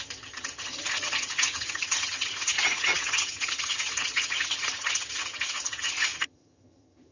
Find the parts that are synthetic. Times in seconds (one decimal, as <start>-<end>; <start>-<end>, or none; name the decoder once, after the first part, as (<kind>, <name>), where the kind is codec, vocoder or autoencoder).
0.0-7.1 (vocoder, HiFi-GAN)